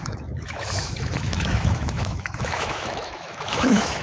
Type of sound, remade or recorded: remade